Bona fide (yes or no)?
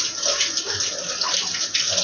yes